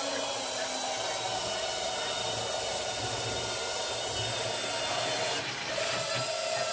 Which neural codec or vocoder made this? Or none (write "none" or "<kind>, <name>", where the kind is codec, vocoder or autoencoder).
none